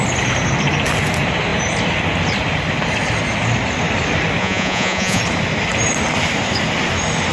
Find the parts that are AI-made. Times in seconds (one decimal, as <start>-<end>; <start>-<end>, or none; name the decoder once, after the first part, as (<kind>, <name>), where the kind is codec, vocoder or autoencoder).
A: 4.4-5.2 (vocoder, Vocos)